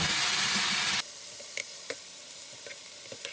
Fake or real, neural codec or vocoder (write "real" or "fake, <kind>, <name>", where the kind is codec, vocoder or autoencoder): real